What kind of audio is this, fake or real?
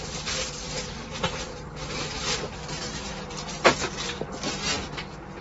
real